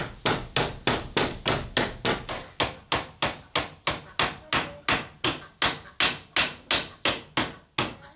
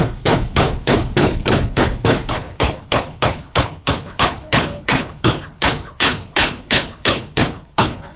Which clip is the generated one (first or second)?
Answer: second